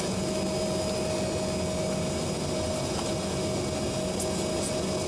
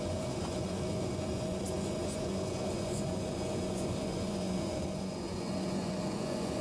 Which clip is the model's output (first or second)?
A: second